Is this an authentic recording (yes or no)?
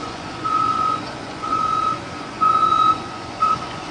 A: no